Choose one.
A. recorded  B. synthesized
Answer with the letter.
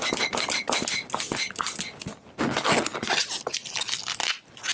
A